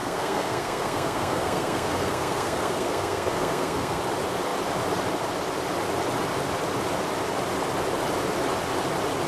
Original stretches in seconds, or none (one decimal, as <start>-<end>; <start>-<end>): 4.0-9.3